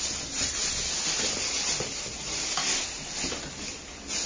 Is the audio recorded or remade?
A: recorded